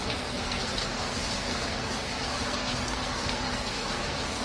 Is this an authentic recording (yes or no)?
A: no